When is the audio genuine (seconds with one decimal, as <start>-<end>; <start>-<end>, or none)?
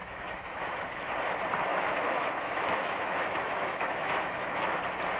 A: 0.8-1.7; 4.8-5.2